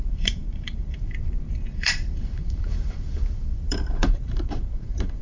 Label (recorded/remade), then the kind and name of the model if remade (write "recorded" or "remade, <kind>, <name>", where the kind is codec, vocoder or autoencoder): remade, vocoder, BigVGAN v2